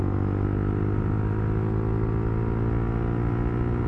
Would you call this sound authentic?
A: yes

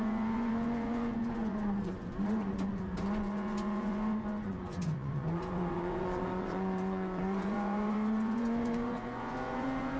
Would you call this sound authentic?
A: no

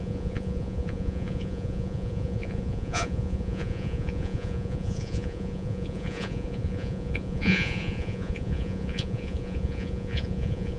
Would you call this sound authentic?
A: no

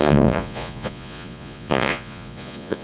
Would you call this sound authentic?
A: no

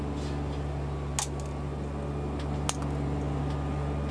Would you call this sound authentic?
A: yes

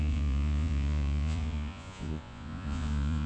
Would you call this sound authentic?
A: no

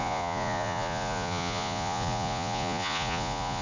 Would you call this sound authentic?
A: no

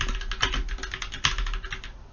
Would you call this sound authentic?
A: yes